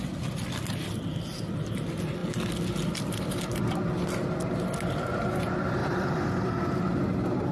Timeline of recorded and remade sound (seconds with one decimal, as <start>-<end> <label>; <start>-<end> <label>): 0.0-5.8 recorded; 5.8-7.0 remade; 7.0-7.5 recorded